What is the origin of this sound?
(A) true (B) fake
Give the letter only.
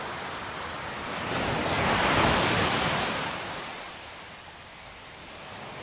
A